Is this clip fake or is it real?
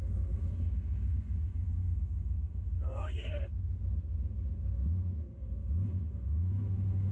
fake